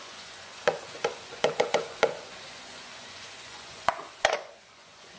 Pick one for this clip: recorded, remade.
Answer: remade